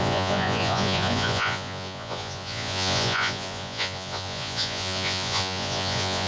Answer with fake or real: fake